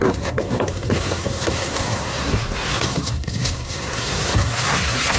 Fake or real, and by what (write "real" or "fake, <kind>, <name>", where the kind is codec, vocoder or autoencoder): fake, codec, SNAC